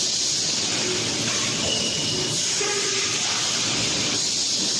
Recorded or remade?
recorded